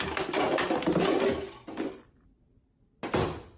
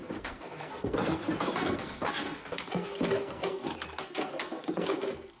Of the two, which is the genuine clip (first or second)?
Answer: first